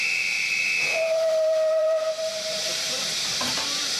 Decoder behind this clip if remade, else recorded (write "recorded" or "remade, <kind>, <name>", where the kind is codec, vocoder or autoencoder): remade, vocoder, BigVGAN v2